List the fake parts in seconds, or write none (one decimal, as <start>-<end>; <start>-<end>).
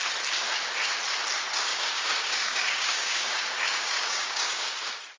1.7-4.8